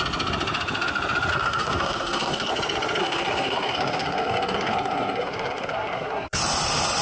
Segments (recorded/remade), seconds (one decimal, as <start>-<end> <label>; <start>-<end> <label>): 0.0-1.3 recorded; 1.3-2.5 remade; 2.5-3.0 recorded; 3.0-6.4 remade; 6.4-7.0 recorded